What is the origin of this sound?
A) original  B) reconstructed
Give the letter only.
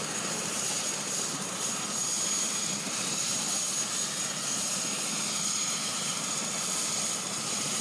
A